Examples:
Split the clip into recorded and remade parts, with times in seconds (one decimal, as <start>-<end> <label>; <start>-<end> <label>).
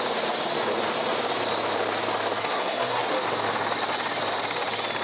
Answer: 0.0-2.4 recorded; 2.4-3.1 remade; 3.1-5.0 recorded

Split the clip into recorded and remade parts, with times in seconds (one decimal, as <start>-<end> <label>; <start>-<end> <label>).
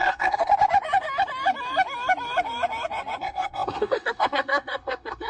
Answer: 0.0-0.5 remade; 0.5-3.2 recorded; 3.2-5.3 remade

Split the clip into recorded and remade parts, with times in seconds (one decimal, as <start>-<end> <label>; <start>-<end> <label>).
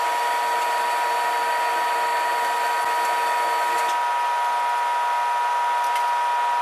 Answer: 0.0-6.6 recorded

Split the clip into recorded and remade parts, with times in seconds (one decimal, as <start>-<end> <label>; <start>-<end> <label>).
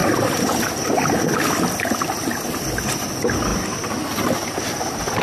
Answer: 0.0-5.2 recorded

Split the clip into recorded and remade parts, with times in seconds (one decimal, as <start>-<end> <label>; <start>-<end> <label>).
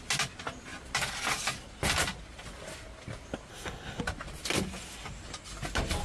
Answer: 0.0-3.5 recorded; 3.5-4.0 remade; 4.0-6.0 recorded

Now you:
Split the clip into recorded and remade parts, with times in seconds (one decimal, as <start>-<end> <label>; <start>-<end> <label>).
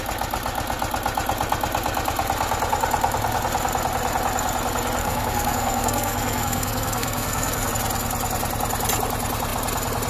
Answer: 0.0-5.0 recorded; 5.0-7.7 remade; 7.7-10.1 recorded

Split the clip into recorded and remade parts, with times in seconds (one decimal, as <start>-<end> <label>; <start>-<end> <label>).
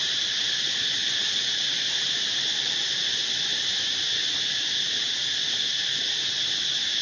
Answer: 0.0-7.0 recorded